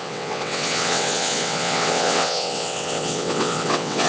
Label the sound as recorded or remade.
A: remade